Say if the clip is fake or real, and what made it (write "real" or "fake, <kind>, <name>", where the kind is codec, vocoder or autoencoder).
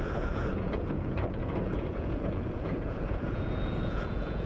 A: fake, vocoder, Vocos